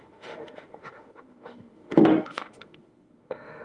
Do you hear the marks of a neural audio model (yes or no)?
yes